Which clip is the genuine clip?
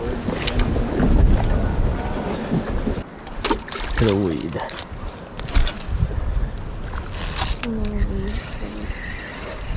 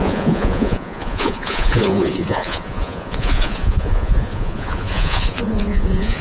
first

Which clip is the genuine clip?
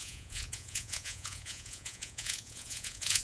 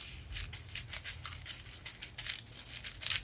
second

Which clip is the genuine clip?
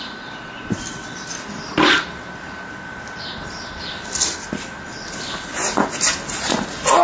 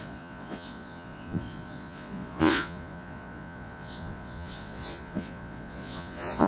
first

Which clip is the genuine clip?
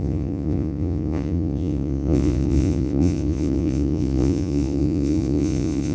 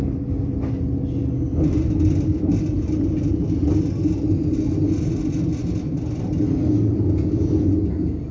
second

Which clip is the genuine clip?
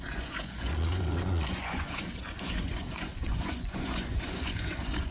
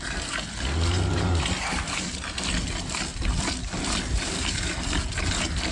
second